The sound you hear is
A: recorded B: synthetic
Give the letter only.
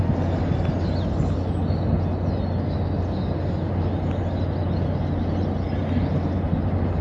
A